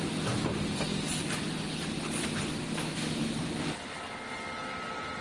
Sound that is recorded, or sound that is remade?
recorded